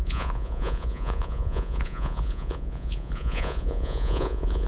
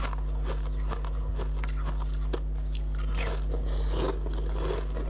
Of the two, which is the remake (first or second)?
first